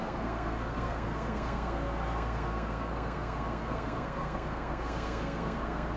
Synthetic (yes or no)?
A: yes